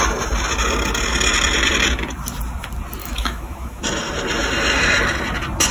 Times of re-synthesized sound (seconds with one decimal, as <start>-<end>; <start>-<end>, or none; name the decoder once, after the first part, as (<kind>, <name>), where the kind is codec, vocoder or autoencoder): 3.0-3.8 (autoencoder, DAC-VAE)